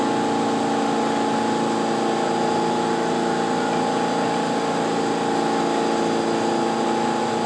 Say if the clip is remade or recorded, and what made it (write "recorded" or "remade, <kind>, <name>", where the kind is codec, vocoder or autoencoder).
recorded